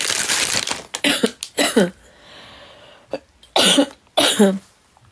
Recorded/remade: recorded